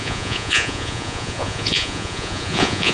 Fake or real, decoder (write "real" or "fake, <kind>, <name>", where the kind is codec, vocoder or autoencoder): fake, vocoder, Vocos